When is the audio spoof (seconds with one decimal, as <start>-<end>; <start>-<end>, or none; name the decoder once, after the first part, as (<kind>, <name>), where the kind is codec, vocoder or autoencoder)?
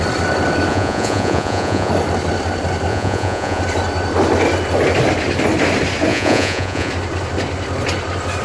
0.7-1.9 (vocoder, Vocos); 2.9-3.6; 6.1-6.9